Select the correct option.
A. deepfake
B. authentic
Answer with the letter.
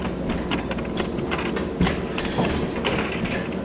B